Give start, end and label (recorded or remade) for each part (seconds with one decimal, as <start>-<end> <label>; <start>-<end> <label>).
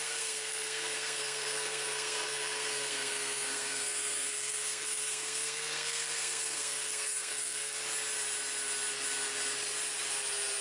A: 0.0-7.8 remade; 7.8-10.6 recorded